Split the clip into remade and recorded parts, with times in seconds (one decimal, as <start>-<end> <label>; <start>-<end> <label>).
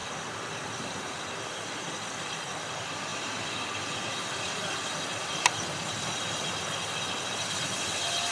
0.0-1.2 remade; 1.2-8.3 recorded